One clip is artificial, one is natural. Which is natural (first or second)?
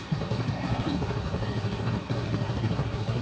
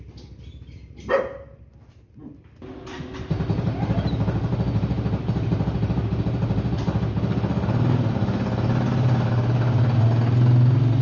second